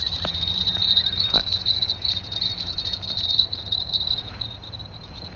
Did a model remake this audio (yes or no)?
yes